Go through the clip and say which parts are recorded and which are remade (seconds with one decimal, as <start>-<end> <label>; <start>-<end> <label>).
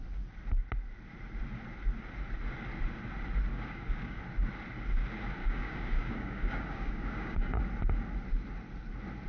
0.0-3.5 recorded; 3.5-4.2 remade; 4.2-5.4 recorded; 5.4-7.6 remade; 7.6-9.3 recorded